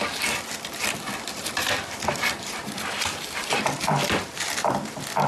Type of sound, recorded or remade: remade